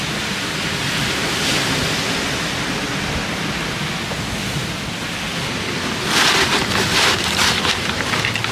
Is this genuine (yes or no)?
yes